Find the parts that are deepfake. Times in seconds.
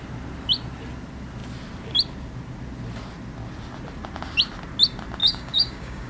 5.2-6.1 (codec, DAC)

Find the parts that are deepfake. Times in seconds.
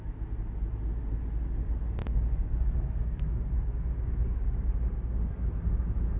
2.0-5.3 (codec, DAC)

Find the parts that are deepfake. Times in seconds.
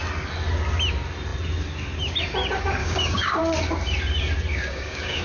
2.8-3.4 (codec, DAC); 4.5-5.2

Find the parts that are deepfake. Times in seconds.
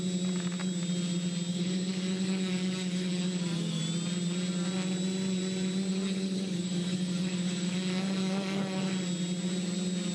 1.5-3.8 (codec, DAC); 5.9-8.8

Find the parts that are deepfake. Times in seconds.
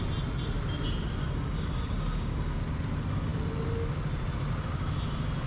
1.2-2.6 (codec, DAC)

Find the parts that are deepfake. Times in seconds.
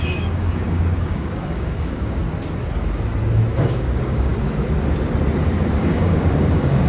0.0-2.2 (codec, DAC); 3.5-4.3; 5.8-6.9